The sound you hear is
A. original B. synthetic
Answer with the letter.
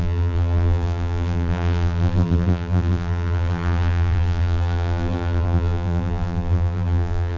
B